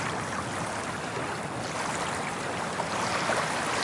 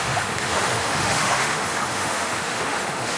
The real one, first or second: first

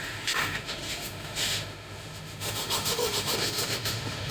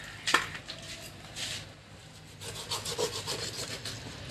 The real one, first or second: second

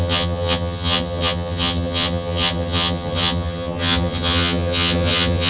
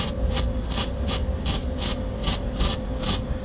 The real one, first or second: second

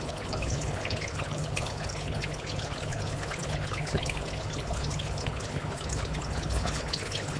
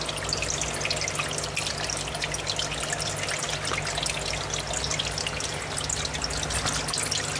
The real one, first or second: second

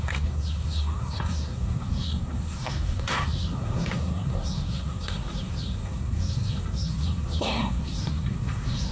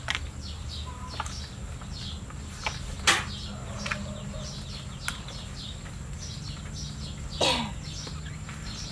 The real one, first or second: second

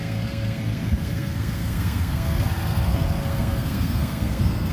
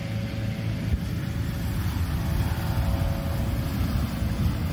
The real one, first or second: second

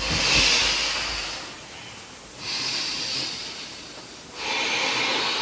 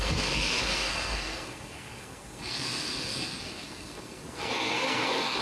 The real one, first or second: first